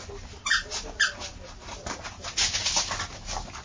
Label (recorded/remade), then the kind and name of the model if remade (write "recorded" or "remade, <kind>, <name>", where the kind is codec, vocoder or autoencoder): recorded